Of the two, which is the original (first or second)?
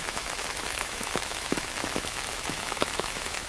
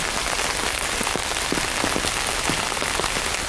second